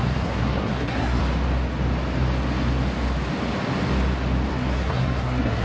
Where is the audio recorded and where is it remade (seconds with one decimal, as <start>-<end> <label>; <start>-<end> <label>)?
0.0-1.2 remade; 1.2-4.5 recorded; 4.5-5.6 remade